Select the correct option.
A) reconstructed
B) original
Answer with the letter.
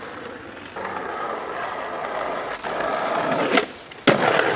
B